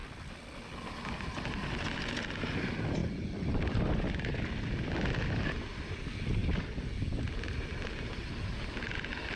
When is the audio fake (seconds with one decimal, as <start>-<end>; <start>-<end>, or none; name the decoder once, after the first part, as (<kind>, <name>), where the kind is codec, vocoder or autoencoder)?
3.0-3.6 (vocoder, BigVGAN v2)